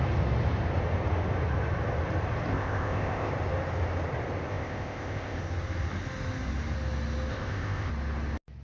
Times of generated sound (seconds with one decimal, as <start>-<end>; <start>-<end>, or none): 2.5-3.3; 4.5-5.4; 7.3-7.9